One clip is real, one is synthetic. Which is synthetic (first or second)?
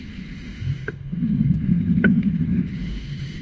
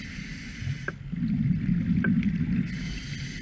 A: first